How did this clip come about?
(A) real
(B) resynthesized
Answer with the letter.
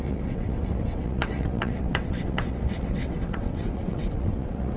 B